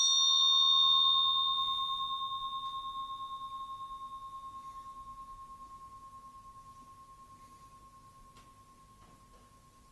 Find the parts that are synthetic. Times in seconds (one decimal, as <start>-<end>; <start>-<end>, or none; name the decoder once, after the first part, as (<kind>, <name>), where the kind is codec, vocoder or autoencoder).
none